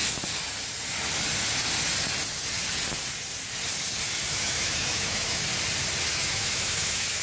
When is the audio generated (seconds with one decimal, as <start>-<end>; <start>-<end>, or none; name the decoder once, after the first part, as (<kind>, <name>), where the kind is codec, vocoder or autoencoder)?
4.3-5.5 (autoencoder, DAC-VAE); 6.1-7.2